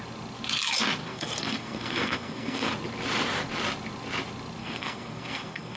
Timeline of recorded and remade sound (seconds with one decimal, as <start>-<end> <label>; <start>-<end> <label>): 0.0-1.0 recorded; 1.0-2.7 remade; 2.7-4.6 recorded; 4.6-5.8 remade